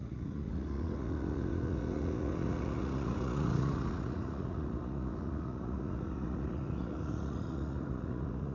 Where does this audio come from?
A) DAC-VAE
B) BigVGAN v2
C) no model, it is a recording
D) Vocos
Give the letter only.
D